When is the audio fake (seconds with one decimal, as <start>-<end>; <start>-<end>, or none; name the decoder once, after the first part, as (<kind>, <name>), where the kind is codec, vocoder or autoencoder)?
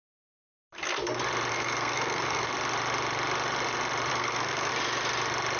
1.5-2.5 (codec, SNAC); 4.1-4.7